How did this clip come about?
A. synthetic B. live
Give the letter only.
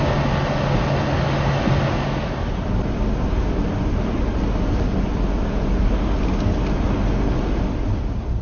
B